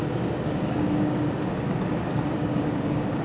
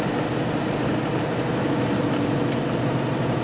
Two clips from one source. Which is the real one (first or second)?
second